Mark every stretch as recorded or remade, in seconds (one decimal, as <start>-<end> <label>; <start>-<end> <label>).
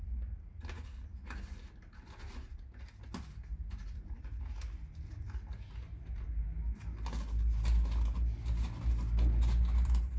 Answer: 0.0-3.5 recorded; 3.5-4.2 remade; 4.2-10.2 recorded